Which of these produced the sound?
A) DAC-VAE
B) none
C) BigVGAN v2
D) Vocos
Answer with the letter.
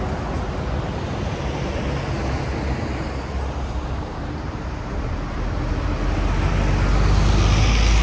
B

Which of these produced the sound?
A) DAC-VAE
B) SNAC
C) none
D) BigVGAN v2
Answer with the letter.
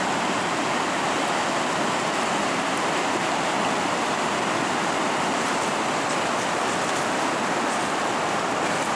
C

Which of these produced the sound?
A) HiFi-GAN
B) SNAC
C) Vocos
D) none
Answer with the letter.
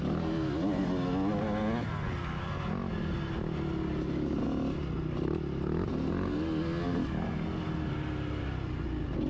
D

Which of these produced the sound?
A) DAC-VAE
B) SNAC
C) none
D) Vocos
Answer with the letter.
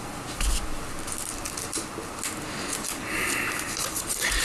C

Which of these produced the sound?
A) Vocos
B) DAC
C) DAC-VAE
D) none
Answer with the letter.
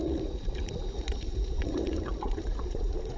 A